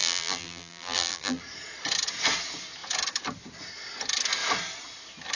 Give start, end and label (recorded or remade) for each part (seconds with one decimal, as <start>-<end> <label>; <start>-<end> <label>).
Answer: 0.0-1.4 remade; 1.4-5.4 recorded